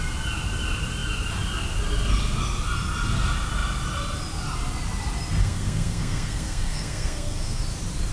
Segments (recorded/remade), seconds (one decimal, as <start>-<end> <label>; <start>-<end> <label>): 0.0-5.4 recorded; 5.4-7.6 remade; 7.6-8.1 recorded